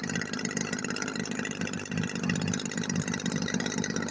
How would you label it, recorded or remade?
recorded